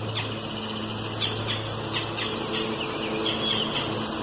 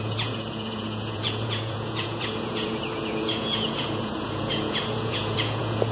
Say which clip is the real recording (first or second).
first